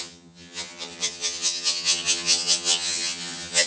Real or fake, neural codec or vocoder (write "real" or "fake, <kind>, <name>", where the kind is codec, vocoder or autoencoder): fake, vocoder, HiFi-GAN